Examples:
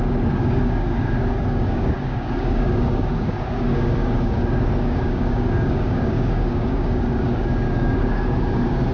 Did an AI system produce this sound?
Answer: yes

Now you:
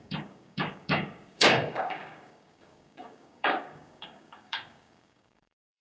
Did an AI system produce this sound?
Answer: yes